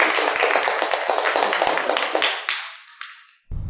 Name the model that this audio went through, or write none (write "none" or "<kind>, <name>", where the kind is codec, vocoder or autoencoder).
none